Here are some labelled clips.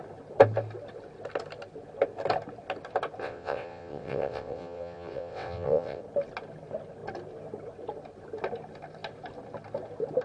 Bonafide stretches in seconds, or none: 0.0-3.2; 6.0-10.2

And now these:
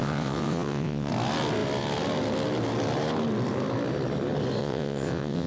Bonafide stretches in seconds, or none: 1.1-4.6

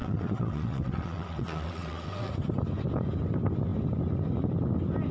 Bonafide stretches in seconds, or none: 2.3-5.1

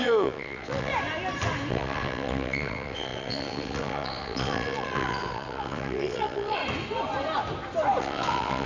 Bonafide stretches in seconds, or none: 0.9-1.7; 6.6-8.0